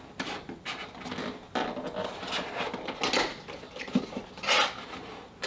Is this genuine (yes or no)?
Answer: yes